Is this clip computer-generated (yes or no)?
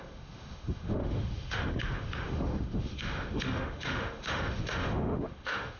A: yes